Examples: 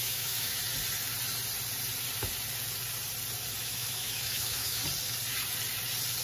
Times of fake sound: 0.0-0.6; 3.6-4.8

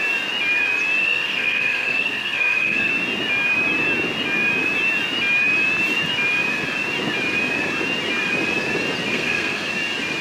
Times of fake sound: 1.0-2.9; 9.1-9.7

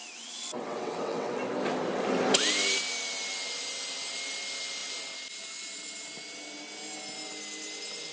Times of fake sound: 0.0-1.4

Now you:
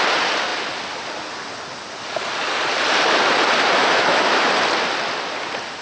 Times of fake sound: 3.8-4.5

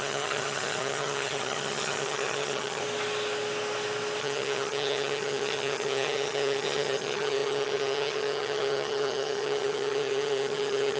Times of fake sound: 0.0-2.8; 4.2-11.0

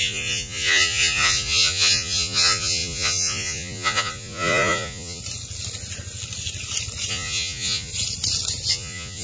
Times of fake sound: 0.0-5.2; 7.1-7.9; 8.7-9.2

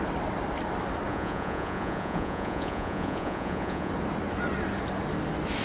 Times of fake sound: 1.1-3.9